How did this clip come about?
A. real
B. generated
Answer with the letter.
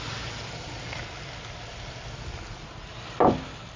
A